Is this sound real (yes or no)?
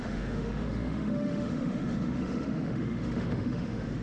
no